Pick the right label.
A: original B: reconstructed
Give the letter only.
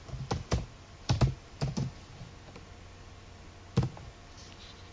A